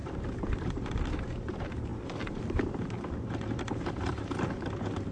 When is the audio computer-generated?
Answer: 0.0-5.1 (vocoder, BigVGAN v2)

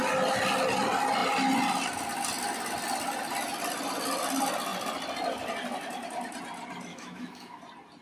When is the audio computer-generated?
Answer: 6.9-7.6 (autoencoder, DAC-VAE)

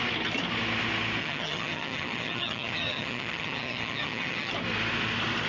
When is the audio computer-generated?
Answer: 1.2-4.5 (vocoder, HiFi-GAN)

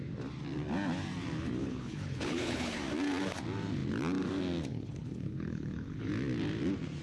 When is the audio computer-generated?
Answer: 1.6-2.8 (codec, HILCodec); 4.7-6.1

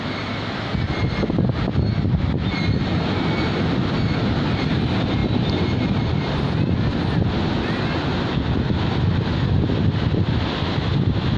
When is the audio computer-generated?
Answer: none

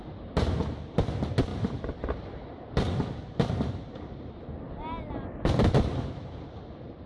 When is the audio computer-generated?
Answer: none